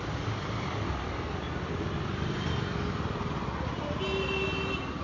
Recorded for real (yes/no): yes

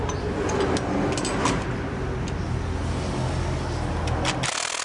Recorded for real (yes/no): yes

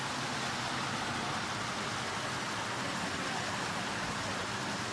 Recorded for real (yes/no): yes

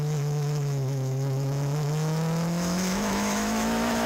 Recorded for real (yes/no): no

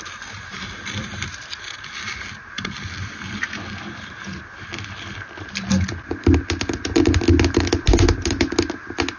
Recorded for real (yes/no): yes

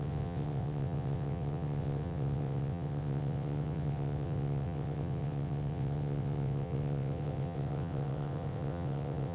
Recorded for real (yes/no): no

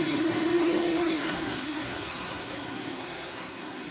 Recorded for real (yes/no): no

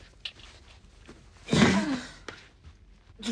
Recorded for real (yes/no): yes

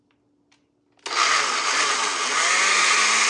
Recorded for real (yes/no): yes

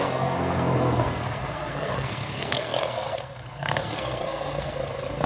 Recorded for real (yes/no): no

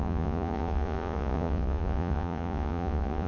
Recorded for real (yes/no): no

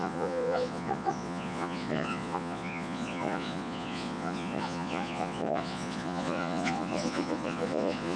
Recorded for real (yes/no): no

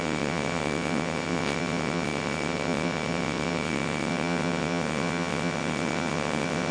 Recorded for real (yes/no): no